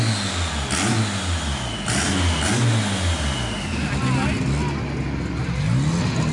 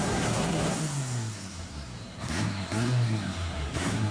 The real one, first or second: first